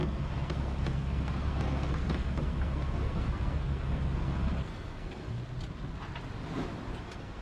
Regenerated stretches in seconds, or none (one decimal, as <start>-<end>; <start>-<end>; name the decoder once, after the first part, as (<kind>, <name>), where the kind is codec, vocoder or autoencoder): 0.0-5.4 (codec, SNAC); 7.0-7.4

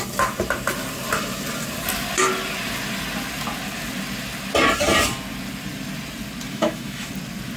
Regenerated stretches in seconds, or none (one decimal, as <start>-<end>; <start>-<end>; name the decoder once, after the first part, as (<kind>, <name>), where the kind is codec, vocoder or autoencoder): 6.5-7.1 (autoencoder, DAC-VAE)

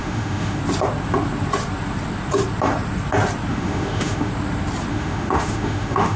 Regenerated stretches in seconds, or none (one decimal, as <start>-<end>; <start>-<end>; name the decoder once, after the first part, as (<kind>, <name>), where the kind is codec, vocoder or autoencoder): 0.0-0.6 (autoencoder, DAC-VAE); 3.5-4.3; 4.9-6.2

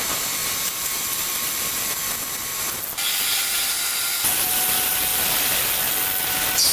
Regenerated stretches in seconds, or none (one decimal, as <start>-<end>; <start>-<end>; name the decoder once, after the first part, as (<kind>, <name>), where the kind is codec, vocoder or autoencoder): none

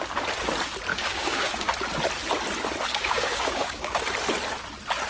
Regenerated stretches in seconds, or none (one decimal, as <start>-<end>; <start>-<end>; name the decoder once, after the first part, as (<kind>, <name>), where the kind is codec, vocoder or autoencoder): 0.9-1.7 (codec, DAC); 2.9-4.0

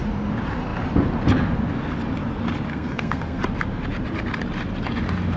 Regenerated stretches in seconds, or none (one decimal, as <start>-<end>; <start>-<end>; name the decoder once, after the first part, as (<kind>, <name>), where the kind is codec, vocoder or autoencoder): 2.7-3.4 (codec, SNAC)